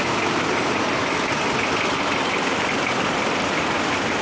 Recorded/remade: recorded